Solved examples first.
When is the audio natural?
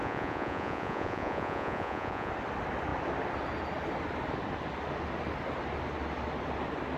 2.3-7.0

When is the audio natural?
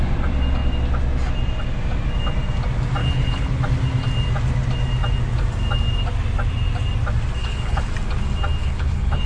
0.0-3.0; 3.6-7.4; 7.9-8.6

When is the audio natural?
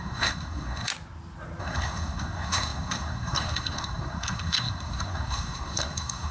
0.9-1.6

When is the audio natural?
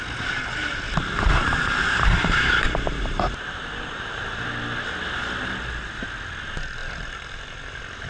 0.0-1.4; 4.2-8.1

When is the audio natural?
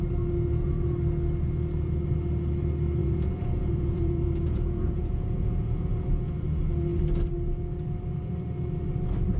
0.0-3.0; 6.1-9.4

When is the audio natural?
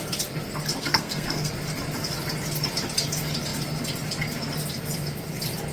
0.0-0.8; 1.5-5.7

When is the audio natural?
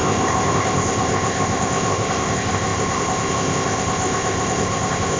none